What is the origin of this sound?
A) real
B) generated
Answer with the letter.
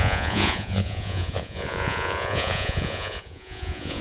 B